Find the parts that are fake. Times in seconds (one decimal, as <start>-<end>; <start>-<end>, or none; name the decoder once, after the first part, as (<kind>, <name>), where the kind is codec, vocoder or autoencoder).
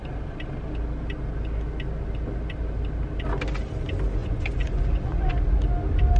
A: 4.2-5.3 (vocoder, Vocos)